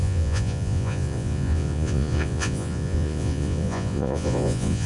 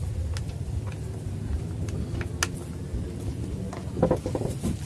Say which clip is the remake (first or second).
first